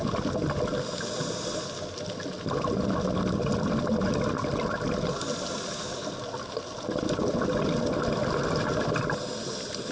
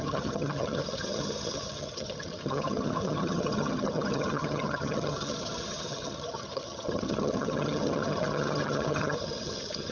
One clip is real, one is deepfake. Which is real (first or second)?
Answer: first